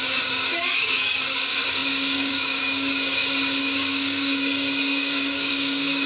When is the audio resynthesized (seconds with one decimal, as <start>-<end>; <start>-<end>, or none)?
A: 0.0-6.1